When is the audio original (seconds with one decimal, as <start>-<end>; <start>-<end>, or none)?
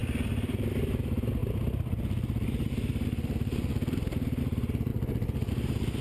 1.4-4.4; 4.9-5.5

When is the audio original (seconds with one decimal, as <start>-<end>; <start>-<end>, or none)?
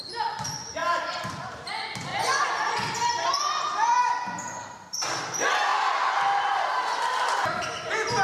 0.0-0.8; 1.7-8.2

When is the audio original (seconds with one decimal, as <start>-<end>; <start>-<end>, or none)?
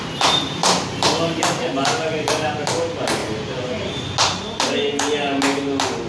0.0-0.6; 2.5-6.1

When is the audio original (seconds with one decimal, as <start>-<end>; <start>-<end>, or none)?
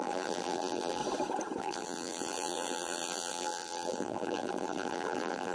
1.0-1.6